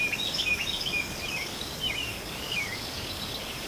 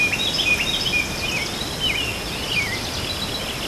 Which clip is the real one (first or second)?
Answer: second